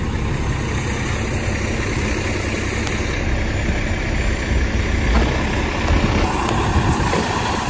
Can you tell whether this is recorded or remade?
recorded